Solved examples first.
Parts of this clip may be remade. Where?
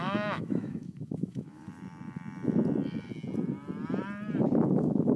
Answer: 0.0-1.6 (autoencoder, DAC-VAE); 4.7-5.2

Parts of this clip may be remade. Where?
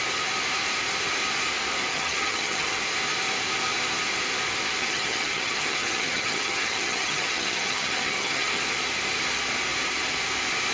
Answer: 1.9-2.8 (vocoder, HiFi-GAN); 4.8-8.6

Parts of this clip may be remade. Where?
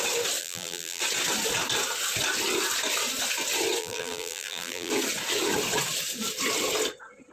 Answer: 0.4-1.0 (vocoder, BigVGAN v2); 3.8-4.9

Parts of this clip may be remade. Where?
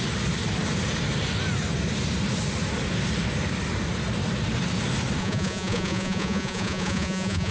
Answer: 5.2-7.5 (vocoder, Vocos)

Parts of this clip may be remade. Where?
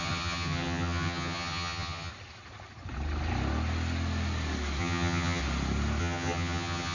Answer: 0.0-2.1 (vocoder, HiFi-GAN); 4.8-5.4; 6.0-6.9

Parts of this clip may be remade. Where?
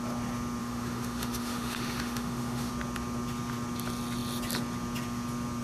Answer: 0.6-2.7 (autoencoder, DAC-VAE)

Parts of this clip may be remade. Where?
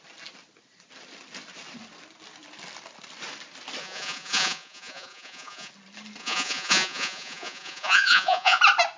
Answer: 3.8-5.7 (vocoder, Vocos); 6.2-8.6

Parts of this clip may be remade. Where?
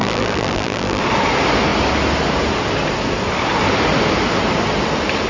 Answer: 0.0-1.0 (vocoder, BigVGAN v2)